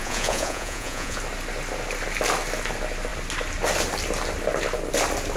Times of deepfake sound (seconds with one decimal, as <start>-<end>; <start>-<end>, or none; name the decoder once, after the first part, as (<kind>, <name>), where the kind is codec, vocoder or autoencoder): 0.0-1.2 (vocoder, Vocos)